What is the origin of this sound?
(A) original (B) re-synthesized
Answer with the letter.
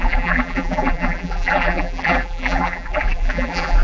B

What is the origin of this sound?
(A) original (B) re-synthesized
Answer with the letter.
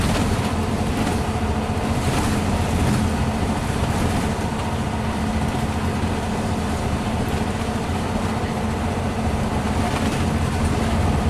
A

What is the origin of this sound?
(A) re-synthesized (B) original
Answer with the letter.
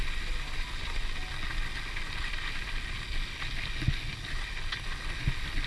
B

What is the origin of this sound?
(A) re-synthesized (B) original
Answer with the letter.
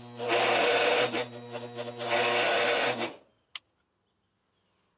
B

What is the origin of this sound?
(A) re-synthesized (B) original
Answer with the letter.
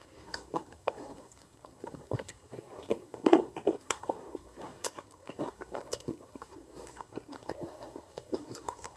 A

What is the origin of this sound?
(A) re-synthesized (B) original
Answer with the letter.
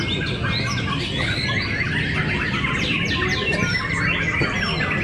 B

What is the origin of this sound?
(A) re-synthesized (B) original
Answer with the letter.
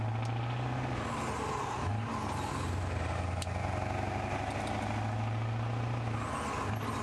B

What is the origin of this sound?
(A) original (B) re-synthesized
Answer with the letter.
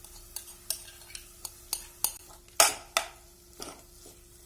A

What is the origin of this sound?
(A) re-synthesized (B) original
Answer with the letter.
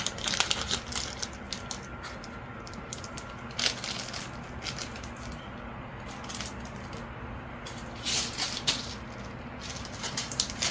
B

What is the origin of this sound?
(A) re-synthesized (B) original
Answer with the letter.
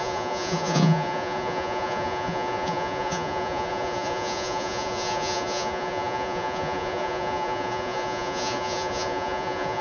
A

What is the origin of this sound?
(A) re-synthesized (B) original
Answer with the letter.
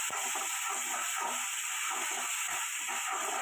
B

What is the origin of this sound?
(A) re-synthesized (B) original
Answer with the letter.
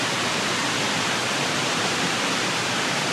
A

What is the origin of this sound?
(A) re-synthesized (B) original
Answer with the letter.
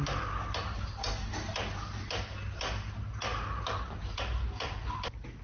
B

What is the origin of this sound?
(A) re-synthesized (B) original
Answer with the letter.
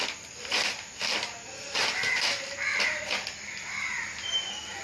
B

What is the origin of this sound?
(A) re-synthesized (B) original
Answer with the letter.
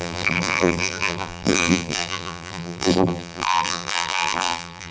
A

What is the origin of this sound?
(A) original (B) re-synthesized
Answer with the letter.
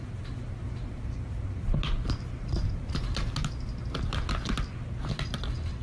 A